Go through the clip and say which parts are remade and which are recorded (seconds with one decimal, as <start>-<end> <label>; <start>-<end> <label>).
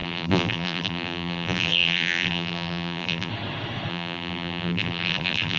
0.0-3.3 remade; 3.3-3.9 recorded; 3.9-5.6 remade